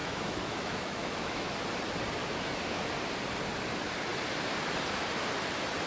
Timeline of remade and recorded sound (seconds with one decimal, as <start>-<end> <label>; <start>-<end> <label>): 0.0-1.5 remade; 1.5-2.2 recorded; 2.2-2.9 remade; 2.9-5.9 recorded